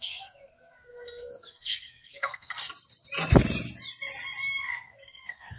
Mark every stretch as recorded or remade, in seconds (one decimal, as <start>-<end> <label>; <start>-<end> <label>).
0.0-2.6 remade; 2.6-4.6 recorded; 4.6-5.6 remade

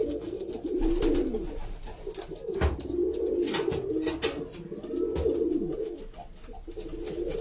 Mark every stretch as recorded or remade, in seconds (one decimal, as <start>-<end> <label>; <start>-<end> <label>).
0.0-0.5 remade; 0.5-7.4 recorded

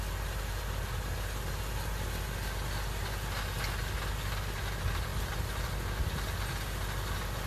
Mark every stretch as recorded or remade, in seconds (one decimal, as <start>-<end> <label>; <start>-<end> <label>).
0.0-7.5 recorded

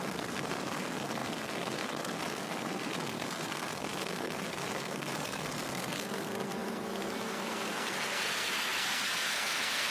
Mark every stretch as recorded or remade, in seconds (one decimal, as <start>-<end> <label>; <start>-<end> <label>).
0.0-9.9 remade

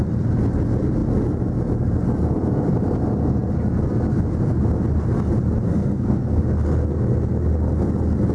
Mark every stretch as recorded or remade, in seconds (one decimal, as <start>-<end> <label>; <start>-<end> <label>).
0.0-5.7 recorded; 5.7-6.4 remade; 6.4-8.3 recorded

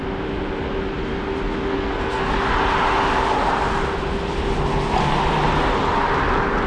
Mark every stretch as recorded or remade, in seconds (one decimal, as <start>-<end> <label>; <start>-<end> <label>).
0.0-1.7 recorded; 1.7-2.3 remade; 2.3-6.7 recorded

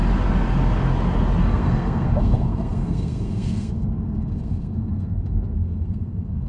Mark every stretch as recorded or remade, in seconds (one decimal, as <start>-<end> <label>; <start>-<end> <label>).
0.0-1.4 recorded; 1.4-6.5 remade